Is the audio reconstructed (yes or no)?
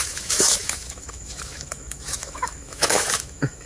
yes